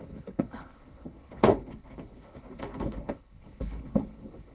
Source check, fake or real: fake